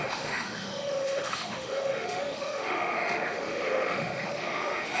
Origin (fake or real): fake